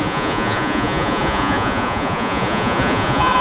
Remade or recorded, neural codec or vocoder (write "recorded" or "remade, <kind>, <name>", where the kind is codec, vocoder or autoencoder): remade, vocoder, Vocos